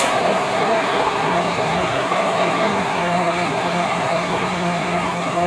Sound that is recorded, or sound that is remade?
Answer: remade